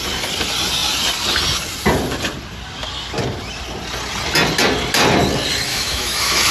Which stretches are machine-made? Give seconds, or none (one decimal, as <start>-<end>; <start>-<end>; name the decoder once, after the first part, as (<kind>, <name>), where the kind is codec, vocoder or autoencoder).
5.7-6.5 (autoencoder, DAC-VAE)

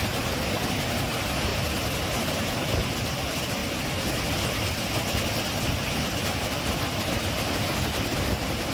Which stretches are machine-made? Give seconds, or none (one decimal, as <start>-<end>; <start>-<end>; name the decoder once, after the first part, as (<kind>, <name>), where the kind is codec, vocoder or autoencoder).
none

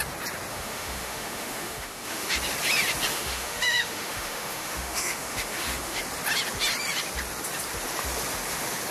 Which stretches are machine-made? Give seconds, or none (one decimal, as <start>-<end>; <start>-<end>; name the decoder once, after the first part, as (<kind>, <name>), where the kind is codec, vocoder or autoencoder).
0.5-2.3 (autoencoder, DAC-VAE); 3.1-6.0

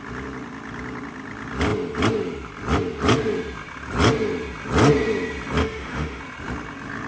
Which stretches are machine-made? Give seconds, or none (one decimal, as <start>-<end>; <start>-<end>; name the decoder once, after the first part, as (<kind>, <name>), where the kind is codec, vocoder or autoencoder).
5.6-6.2 (autoencoder, DAC-VAE)

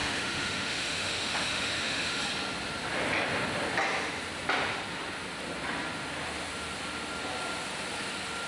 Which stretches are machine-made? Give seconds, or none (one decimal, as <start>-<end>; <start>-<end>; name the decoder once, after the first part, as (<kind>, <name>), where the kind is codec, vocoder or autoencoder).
0.0-2.2 (autoencoder, DAC-VAE)

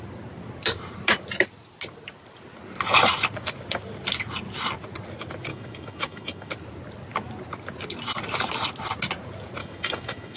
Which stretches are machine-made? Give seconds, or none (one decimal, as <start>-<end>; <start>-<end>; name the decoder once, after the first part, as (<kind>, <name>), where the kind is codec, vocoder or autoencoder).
5.5-6.5 (autoencoder, DAC-VAE); 9.6-10.4

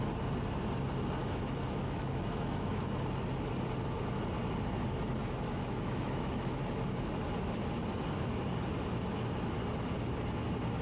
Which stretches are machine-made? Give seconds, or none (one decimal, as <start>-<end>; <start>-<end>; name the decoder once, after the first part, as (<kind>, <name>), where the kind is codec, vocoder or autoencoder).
1.2-2.9 (autoencoder, DAC-VAE); 5.2-6.6

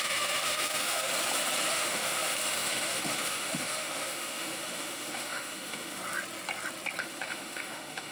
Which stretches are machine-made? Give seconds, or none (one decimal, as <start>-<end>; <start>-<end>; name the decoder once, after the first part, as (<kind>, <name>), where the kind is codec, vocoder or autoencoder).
0.0-1.1 (autoencoder, DAC-VAE); 1.7-6.0; 7.0-8.1